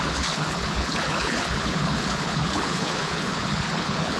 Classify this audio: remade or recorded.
remade